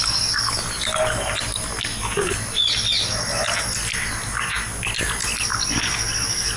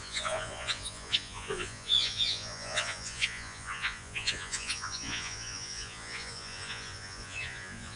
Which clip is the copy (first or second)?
second